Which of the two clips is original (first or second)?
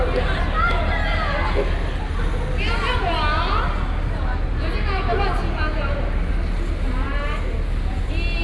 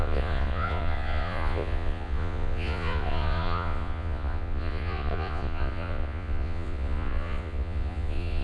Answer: first